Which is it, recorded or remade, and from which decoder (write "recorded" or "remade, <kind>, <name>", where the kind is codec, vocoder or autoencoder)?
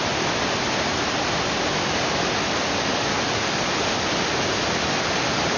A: recorded